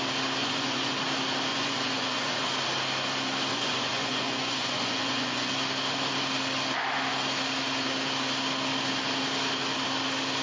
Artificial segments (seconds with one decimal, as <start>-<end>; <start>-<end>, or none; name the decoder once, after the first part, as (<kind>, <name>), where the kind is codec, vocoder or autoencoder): 0.4-0.9 (vocoder, Vocos); 1.5-2.4; 3.5-5.5